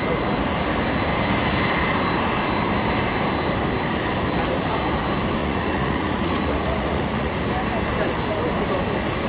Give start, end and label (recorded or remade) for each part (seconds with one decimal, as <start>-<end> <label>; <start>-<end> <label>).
0.0-5.4 recorded; 5.4-7.5 remade; 7.5-9.3 recorded